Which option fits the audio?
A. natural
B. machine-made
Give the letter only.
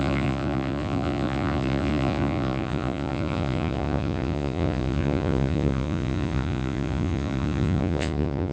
B